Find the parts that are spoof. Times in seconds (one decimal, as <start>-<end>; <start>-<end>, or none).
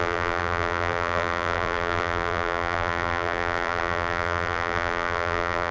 0.0-5.7